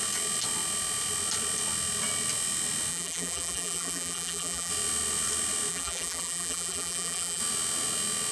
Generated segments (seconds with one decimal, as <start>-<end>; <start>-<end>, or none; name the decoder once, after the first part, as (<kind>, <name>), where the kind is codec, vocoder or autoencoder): 2.9-4.7 (vocoder, BigVGAN v2); 5.7-7.4